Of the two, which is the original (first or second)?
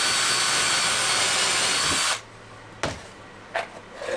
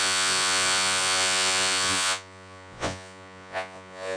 first